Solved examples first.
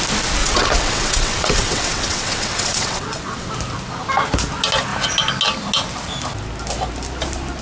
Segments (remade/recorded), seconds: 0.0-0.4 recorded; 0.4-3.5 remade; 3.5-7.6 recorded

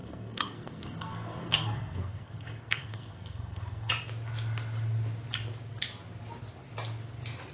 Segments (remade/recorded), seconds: 0.0-3.9 remade; 3.9-7.5 recorded

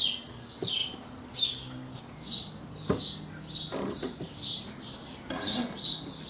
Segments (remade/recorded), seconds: 0.0-0.8 recorded; 0.8-1.4 remade; 1.4-3.7 recorded; 3.7-5.3 remade; 5.3-6.3 recorded

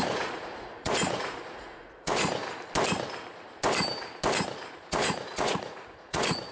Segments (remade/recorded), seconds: 0.0-2.4 remade; 2.4-4.7 recorded; 4.7-6.5 remade

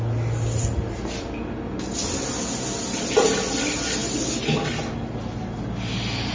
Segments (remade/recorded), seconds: 0.0-6.3 recorded

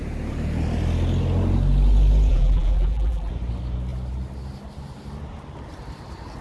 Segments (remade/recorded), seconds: 0.0-2.3 recorded; 2.3-3.3 remade; 3.3-6.4 recorded

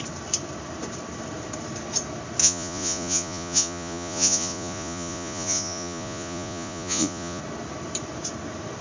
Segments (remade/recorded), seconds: 0.0-2.4 recorded; 2.4-7.4 remade; 7.4-8.8 recorded

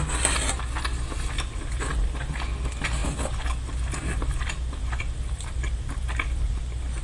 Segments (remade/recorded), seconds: 0.0-7.0 recorded